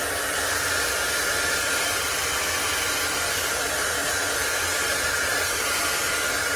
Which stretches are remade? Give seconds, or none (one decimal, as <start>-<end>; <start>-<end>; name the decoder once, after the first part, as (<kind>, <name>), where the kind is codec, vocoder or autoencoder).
5.3-5.8 (vocoder, BigVGAN v2)